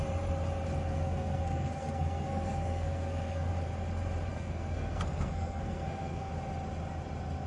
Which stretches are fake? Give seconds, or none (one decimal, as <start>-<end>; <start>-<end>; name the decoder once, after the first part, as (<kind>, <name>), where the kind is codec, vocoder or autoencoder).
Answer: 0.9-3.5 (codec, SNAC); 4.3-6.3